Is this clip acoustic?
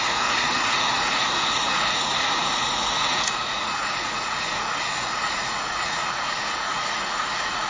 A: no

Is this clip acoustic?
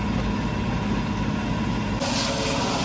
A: yes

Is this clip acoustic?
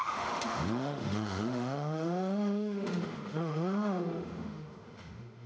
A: no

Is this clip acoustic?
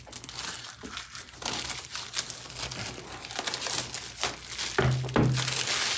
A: yes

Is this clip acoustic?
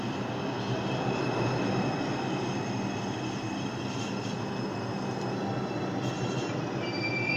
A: yes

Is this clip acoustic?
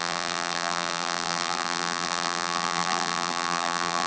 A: no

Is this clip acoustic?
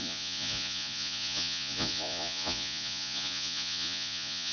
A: no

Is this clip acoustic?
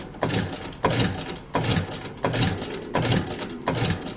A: yes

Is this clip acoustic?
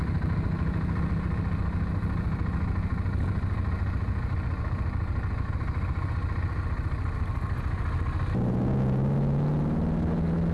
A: yes